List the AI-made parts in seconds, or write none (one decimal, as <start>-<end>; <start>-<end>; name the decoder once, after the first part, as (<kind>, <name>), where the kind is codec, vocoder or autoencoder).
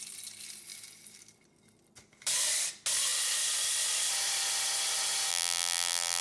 5.3-6.2 (vocoder, BigVGAN v2)